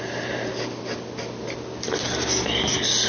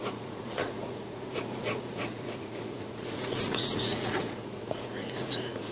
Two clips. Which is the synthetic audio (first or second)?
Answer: second